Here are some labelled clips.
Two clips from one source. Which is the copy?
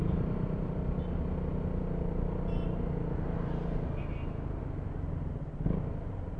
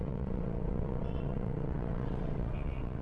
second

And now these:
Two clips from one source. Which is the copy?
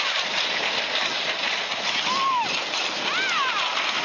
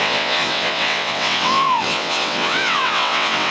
second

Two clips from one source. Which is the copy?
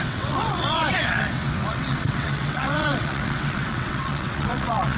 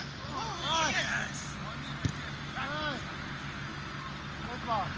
first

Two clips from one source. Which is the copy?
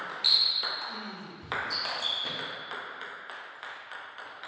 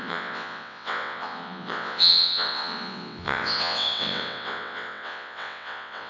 second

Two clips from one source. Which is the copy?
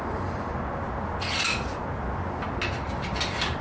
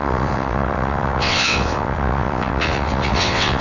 second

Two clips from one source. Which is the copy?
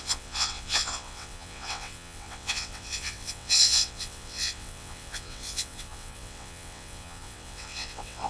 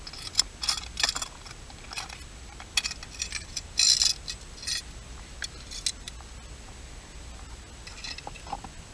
first